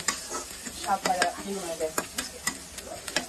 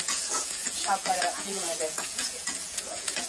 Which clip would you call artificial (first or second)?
second